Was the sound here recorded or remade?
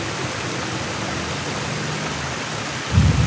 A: recorded